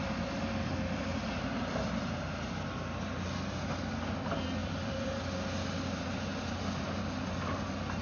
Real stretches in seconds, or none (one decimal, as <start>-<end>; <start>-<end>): 0.0-4.6; 5.2-8.0